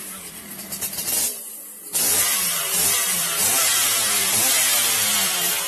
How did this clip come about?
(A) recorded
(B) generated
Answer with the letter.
B